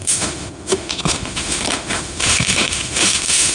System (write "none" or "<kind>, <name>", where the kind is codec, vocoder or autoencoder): autoencoder, DAC-VAE